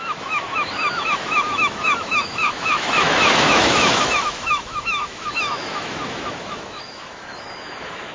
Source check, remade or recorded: remade